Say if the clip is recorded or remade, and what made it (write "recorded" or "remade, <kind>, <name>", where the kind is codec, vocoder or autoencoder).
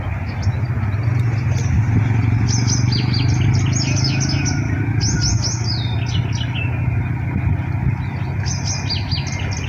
recorded